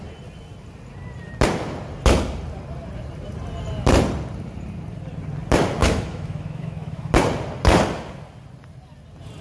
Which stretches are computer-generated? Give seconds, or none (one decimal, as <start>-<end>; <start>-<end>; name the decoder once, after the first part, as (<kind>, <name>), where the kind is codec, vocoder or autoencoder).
5.8-7.1 (autoencoder, DAC-VAE)